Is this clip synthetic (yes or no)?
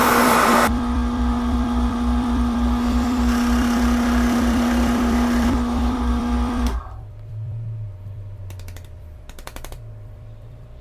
yes